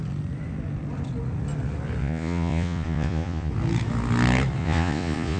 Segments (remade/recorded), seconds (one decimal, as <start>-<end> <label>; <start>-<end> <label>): 0.0-2.0 recorded; 2.0-3.5 remade; 3.5-4.6 recorded; 4.6-5.4 remade